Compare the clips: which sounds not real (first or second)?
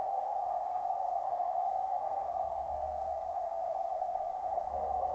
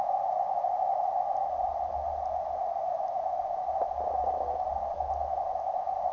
first